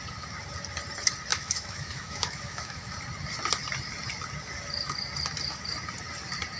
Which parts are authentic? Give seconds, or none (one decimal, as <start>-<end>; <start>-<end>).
0.0-1.3; 2.9-6.6